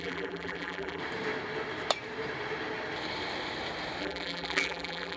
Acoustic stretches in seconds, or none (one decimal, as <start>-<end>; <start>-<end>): 1.0-4.0